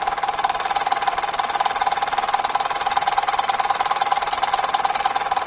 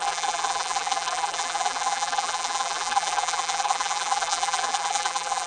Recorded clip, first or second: first